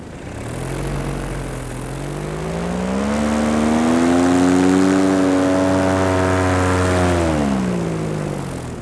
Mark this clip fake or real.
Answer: real